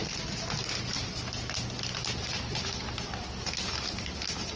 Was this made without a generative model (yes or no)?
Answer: yes